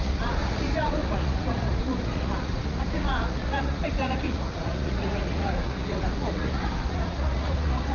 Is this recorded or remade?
remade